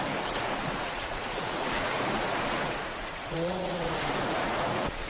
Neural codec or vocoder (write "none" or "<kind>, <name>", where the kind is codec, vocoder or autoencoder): vocoder, Vocos